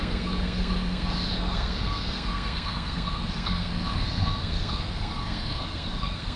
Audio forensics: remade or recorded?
remade